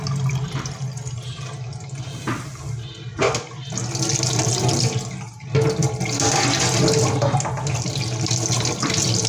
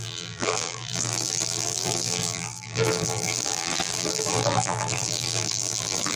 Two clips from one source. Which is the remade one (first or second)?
second